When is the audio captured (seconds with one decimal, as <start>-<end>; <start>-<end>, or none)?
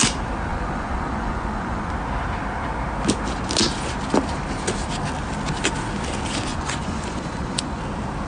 0.0-0.5; 1.9-6.5; 7.8-8.3